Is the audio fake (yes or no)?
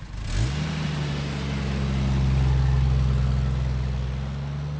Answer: no